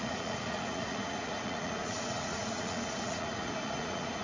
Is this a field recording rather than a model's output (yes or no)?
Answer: no